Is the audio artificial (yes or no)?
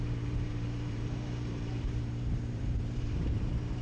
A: yes